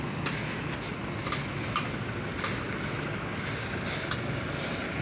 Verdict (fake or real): real